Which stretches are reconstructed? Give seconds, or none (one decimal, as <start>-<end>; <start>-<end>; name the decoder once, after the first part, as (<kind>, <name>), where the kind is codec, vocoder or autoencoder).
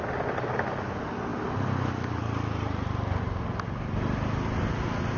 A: none